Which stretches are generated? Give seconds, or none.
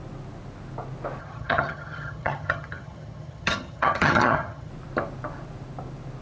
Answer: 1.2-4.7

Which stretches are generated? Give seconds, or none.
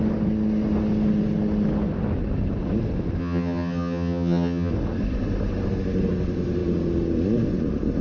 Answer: 3.2-4.7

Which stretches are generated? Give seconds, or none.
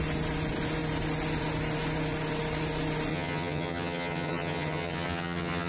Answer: 3.1-5.7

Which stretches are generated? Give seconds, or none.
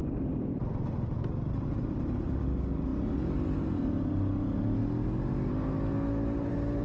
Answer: none